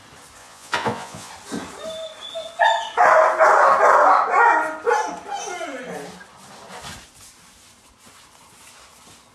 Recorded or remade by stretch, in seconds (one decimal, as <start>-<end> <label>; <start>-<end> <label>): 0.0-0.4 recorded; 0.4-1.3 remade; 1.3-9.3 recorded